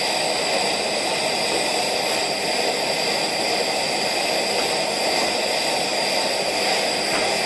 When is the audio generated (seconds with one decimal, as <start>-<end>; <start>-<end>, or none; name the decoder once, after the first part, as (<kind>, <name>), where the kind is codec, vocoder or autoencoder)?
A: 5.9-6.7 (vocoder, BigVGAN v2)